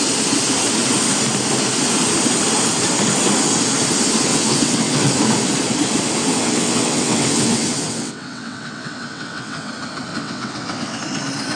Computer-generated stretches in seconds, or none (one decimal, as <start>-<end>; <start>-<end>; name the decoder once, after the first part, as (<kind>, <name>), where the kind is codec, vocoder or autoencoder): 4.3-5.1 (vocoder, WaveNeXt); 6.2-9.7; 10.1-11.0

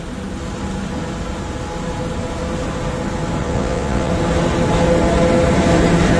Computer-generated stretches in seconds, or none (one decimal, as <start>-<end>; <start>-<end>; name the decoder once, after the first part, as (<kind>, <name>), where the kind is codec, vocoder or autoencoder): 3.4-4.1 (vocoder, WaveNeXt)

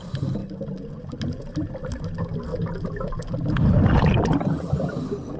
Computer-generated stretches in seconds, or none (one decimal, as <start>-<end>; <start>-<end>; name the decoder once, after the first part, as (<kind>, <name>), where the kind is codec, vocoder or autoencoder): none

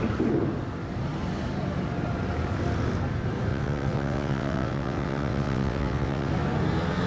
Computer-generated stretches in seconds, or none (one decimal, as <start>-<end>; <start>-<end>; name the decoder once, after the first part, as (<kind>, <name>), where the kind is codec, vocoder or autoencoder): 3.5-6.3 (vocoder, WaveNeXt)